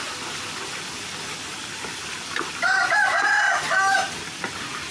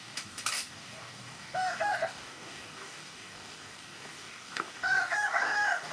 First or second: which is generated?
second